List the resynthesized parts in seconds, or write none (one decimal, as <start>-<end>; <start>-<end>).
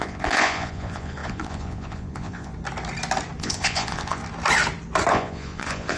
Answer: 0.0-2.5; 3.4-4.2; 5.1-6.0